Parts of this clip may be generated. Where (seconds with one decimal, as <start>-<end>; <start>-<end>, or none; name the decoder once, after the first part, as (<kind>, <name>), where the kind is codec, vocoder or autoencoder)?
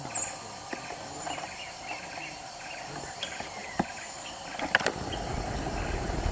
none